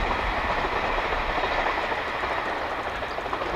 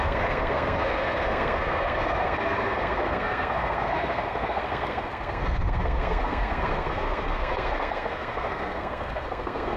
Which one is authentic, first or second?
first